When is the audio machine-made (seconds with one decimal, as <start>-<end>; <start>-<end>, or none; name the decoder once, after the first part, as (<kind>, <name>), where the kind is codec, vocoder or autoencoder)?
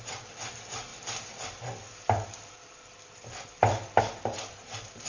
0.0-0.9 (vocoder, BigVGAN v2); 4.0-5.1